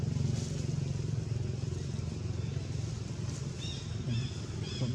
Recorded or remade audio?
recorded